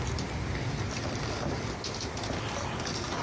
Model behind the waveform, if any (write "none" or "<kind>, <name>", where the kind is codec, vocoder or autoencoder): none